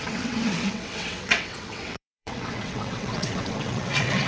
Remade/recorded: remade